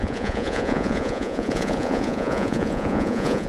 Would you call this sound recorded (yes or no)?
no